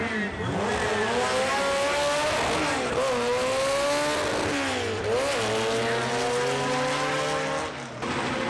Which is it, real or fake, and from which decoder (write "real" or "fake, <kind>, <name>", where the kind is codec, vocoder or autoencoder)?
real